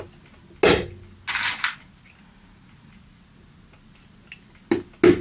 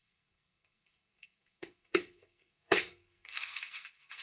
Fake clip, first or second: second